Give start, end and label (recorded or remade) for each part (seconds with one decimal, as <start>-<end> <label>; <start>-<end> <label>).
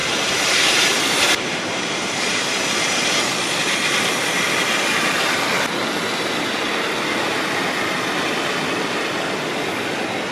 0.0-3.1 remade; 3.1-10.3 recorded